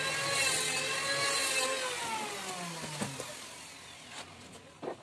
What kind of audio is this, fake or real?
real